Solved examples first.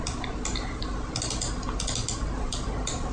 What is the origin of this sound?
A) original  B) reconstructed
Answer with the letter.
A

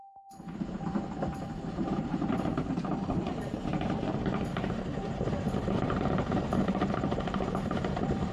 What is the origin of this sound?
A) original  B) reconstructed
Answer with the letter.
B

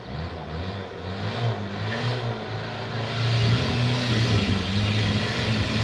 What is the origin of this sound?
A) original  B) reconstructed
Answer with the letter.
A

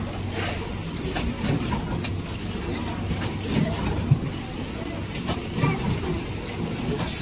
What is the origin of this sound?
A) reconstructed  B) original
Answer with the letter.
B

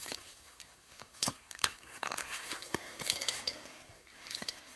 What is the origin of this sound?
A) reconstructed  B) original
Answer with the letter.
A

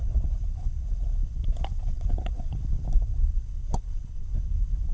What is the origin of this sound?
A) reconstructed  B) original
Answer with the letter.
A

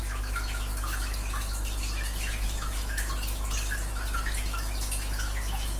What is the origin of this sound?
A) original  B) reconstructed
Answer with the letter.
B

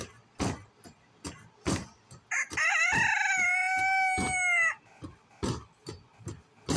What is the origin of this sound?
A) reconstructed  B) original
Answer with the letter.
B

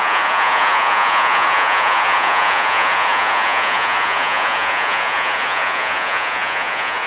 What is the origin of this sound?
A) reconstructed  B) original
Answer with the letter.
A